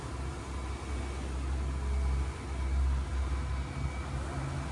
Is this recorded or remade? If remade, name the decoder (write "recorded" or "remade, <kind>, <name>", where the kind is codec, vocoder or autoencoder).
recorded